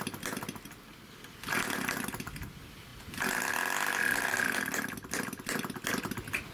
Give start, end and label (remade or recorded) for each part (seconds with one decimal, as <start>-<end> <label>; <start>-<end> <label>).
0.0-6.5 recorded